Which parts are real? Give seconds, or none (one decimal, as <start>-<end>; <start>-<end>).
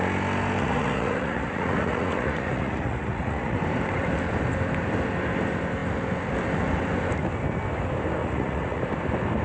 0.0-0.6; 3.6-8.2; 8.8-9.4